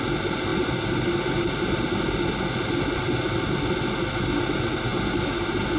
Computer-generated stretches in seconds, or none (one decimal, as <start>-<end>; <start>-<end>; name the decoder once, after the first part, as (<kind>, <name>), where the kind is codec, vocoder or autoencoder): none